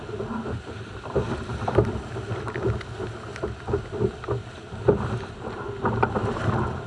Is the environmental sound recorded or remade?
recorded